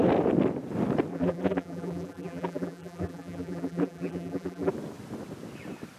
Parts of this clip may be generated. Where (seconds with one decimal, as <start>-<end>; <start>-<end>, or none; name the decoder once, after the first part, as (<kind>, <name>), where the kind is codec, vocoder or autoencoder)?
1.1-4.7 (vocoder, BigVGAN v2)